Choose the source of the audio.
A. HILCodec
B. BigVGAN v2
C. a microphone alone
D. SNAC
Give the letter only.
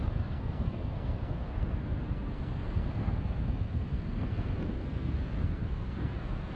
D